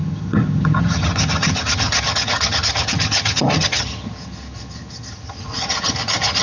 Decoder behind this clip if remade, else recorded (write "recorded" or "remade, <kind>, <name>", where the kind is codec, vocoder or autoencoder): remade, vocoder, HiFi-GAN